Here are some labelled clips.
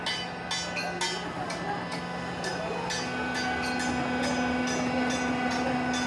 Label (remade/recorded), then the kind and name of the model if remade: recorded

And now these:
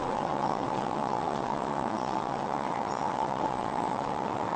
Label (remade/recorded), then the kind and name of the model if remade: remade, vocoder, WaveNeXt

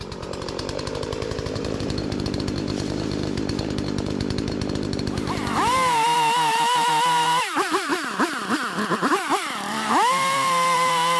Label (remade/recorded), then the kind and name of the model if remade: remade, vocoder, BigVGAN v2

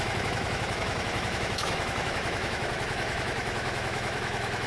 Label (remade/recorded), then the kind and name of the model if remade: remade, autoencoder, DAC-VAE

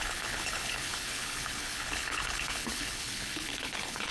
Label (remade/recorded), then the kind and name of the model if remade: remade, codec, HILCodec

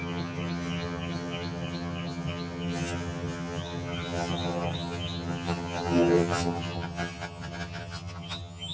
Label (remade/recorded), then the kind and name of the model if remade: remade, vocoder, HiFi-GAN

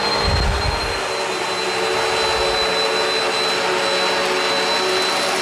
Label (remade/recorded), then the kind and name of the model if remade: recorded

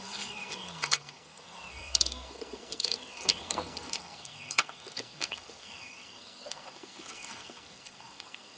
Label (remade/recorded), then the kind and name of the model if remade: remade, codec, SNAC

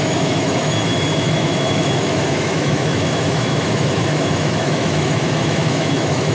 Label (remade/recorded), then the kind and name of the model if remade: remade, autoencoder, DAC-VAE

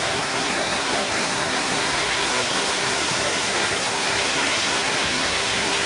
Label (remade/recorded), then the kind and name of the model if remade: remade, codec, SNAC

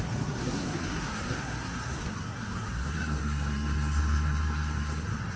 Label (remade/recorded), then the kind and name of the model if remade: remade, codec, SNAC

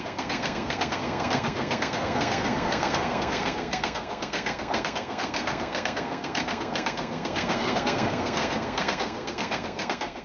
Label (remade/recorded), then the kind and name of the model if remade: remade, codec, SNAC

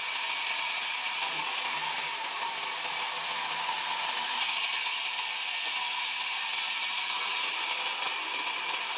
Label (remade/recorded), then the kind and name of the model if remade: recorded